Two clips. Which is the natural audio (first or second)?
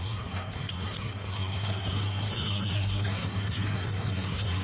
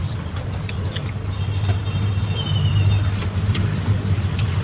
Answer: second